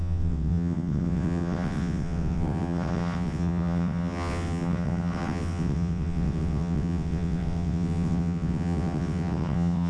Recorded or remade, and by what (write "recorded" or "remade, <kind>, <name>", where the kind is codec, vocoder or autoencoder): remade, vocoder, WaveNeXt